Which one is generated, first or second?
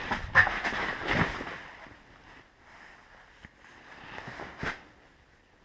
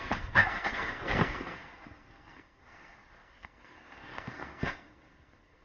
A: second